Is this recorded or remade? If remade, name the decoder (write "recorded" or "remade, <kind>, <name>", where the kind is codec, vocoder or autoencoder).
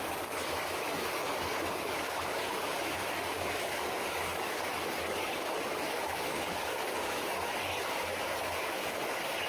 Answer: remade, codec, DAC